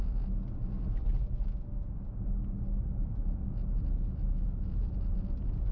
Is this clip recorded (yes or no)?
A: yes